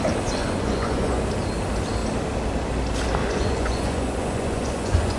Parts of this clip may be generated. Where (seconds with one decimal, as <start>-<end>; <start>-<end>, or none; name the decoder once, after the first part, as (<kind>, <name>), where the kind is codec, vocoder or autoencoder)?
0.4-1.2 (vocoder, Vocos); 3.2-5.2